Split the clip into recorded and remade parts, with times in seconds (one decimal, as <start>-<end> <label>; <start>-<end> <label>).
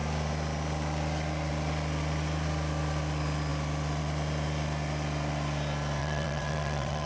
0.0-6.0 recorded; 6.0-7.1 remade